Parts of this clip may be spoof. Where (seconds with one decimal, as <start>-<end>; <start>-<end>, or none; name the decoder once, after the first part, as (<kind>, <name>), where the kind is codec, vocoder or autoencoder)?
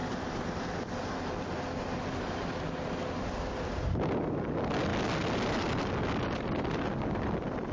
none